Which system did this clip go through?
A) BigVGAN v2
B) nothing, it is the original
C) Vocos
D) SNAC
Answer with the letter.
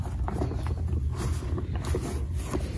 B